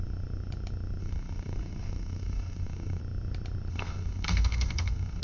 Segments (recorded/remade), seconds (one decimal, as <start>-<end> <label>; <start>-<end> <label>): 0.0-1.0 recorded; 1.0-3.0 remade; 3.0-3.7 recorded; 3.7-5.2 remade